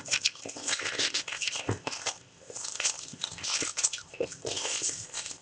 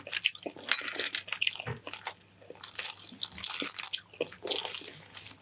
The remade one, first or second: first